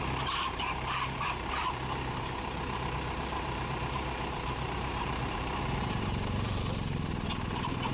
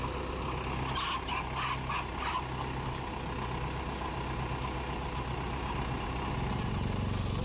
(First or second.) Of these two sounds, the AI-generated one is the first